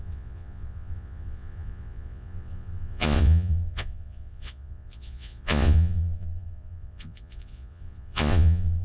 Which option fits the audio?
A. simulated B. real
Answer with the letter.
A